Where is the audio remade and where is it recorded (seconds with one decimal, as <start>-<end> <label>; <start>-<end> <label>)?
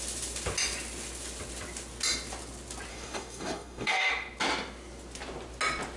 0.0-2.9 recorded; 2.9-4.1 remade; 4.1-6.0 recorded